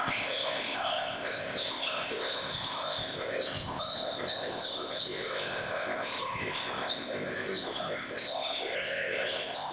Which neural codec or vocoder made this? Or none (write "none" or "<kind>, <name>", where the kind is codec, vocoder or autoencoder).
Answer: codec, ZipCodec